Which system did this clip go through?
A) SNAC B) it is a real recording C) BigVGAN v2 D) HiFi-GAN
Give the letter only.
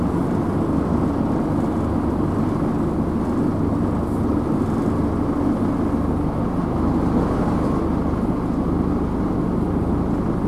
B